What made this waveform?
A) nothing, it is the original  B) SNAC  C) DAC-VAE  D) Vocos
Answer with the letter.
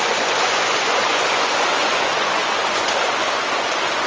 D